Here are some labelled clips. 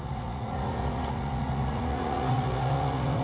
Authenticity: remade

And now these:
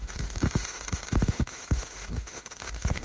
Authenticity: remade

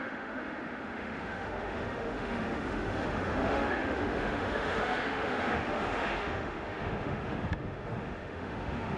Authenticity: remade